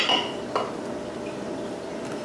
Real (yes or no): yes